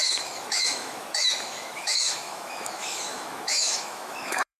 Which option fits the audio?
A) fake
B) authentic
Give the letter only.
A